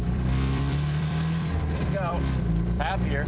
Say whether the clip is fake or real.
fake